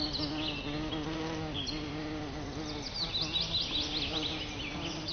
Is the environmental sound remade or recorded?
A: recorded